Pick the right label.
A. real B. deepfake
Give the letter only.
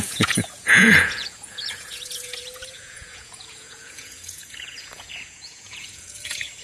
B